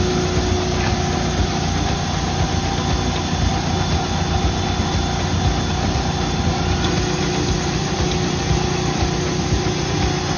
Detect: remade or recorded recorded